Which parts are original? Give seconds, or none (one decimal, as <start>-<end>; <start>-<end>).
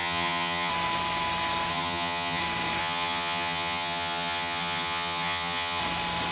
0.7-1.7; 2.4-2.8; 5.8-6.3